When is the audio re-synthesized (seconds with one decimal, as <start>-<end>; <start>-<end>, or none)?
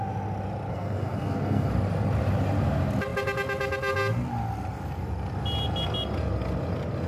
0.7-1.7